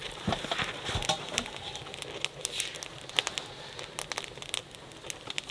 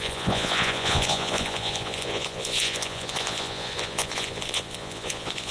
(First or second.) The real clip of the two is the first